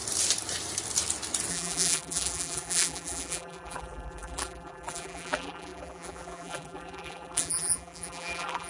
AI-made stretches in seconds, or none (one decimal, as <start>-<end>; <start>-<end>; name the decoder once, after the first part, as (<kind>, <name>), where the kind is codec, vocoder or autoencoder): 1.5-8.7 (vocoder, BigVGAN v2)